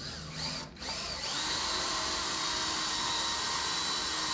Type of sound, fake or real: real